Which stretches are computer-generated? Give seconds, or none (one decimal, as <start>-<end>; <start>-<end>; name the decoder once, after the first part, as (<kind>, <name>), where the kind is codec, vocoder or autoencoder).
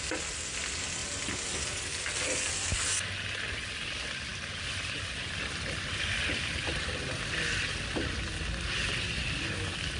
none